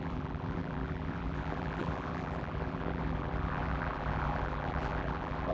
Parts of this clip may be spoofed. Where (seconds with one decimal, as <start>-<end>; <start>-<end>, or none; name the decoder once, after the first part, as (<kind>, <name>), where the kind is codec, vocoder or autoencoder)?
0.0-5.5 (vocoder, BigVGAN v2)